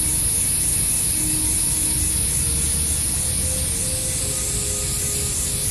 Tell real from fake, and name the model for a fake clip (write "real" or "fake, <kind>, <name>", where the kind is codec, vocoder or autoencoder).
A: real